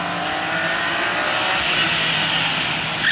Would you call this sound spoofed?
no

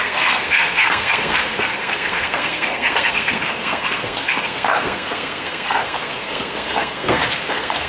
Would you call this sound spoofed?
yes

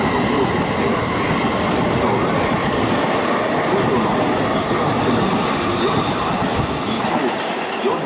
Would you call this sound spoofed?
no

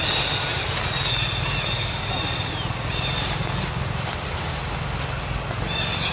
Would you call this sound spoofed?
no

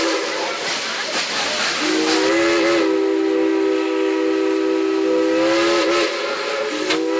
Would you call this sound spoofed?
no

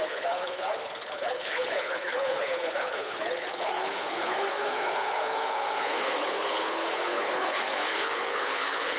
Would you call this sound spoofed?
yes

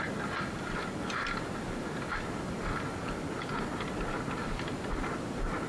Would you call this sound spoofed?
no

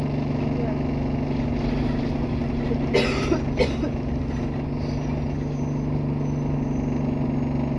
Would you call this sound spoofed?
no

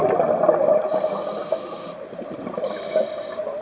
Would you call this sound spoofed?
no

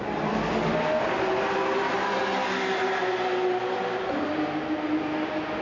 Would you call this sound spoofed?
no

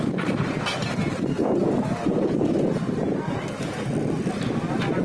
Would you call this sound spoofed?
no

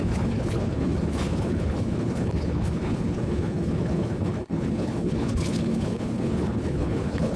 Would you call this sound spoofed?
yes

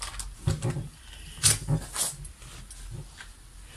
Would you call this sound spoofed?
no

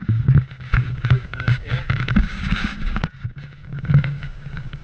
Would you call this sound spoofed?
yes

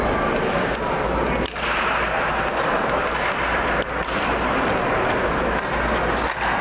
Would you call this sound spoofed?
no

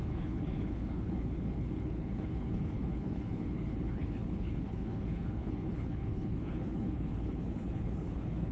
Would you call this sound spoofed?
yes